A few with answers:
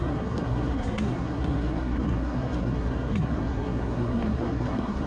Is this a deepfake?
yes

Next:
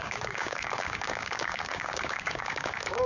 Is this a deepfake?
yes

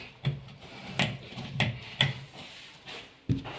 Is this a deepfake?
no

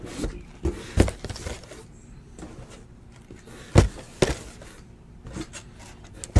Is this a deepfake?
no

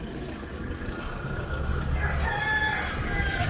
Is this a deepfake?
no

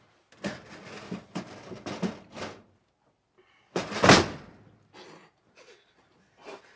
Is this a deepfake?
no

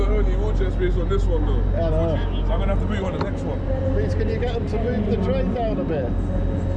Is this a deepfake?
no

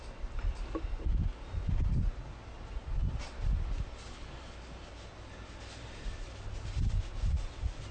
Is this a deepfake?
no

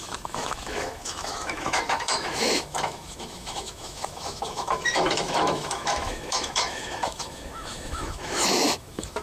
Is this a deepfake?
yes